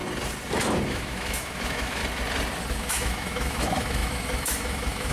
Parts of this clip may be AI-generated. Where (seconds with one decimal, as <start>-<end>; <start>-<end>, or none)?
0.9-2.0; 2.7-5.1

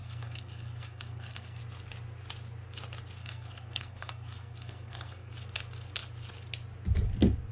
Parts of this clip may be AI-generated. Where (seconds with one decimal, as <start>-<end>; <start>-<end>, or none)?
0.0-1.6; 3.2-5.3

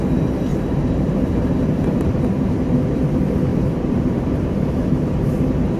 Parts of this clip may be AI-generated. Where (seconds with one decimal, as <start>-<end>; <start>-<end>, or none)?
0.5-2.5; 3.5-5.8

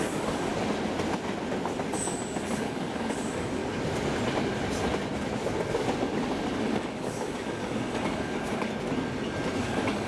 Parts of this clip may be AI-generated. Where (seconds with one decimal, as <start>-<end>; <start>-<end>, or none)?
0.0-0.5; 2.0-3.6; 6.6-8.7; 9.6-10.1

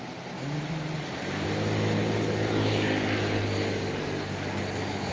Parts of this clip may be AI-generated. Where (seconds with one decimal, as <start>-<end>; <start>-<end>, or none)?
2.0-5.1